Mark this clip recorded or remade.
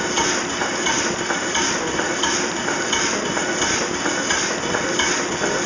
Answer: recorded